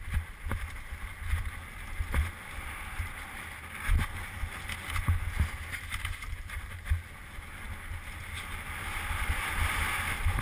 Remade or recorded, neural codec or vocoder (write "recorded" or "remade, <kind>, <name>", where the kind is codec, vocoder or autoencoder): recorded